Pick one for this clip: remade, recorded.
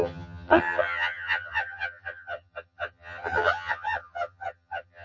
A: remade